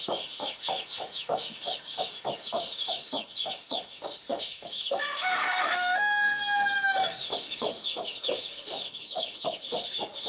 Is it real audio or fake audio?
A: fake